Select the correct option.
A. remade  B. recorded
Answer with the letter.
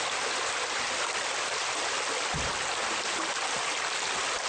B